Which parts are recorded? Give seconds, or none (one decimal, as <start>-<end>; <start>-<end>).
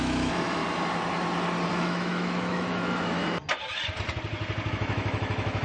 0.6-1.7; 3.2-4.7